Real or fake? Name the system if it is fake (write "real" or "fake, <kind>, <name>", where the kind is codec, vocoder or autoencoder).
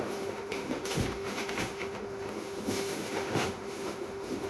fake, autoencoder, DAC-VAE